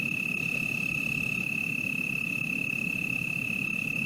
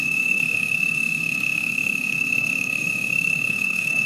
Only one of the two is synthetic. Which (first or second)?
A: second